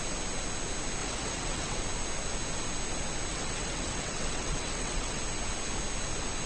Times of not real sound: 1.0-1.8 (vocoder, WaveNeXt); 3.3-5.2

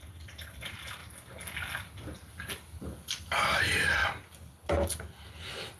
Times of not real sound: 0.0-1.0 (vocoder, BigVGAN v2); 3.4-4.0

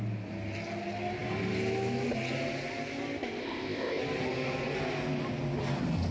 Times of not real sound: 3.4-4.0 (codec, ZipCodec)

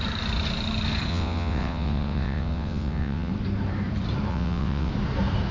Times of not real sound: 1.1-3.3 (vocoder, WaveNeXt); 4.3-4.9

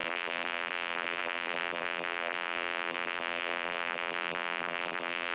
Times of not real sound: 0.0-5.3 (vocoder, BigVGAN v2)

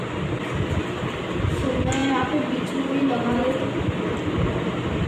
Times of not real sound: none

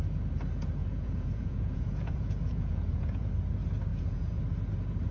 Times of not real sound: 0.8-3.3 (vocoder, Vocos); 3.9-4.4